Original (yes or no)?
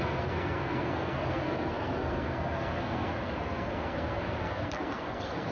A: no